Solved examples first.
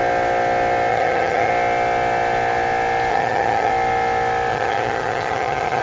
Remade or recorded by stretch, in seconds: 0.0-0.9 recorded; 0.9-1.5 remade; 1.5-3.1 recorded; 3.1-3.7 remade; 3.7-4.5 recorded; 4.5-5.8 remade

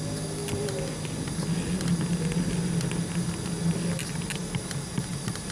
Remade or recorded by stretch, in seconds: 0.0-5.5 recorded

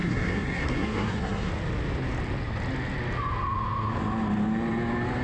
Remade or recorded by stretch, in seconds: 0.0-1.5 remade; 1.5-5.2 recorded

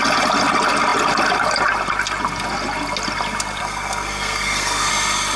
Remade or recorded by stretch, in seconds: 0.0-3.6 recorded; 3.6-4.9 remade; 4.9-5.4 recorded